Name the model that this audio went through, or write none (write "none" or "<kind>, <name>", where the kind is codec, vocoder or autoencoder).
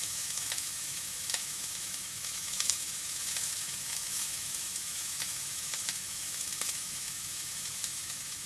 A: autoencoder, DAC-VAE